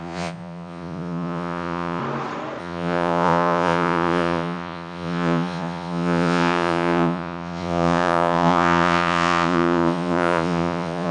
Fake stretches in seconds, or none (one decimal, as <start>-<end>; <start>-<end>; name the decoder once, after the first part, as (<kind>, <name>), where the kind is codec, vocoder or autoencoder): 0.0-2.0 (vocoder, Vocos); 2.6-11.1